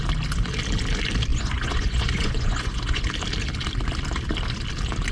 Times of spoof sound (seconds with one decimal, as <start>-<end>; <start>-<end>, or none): 1.3-3.0